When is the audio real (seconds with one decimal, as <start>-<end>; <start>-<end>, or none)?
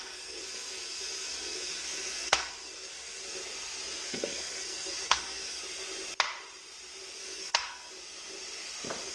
3.4-4.1; 5.6-7.2; 7.9-9.1